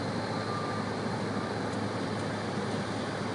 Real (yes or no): yes